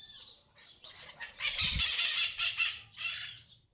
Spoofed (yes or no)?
yes